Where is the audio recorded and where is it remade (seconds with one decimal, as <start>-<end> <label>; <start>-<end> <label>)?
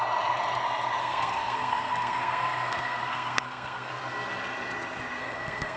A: 0.0-1.0 recorded; 1.0-3.9 remade; 3.9-5.2 recorded; 5.2-5.8 remade